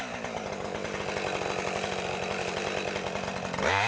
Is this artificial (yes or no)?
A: no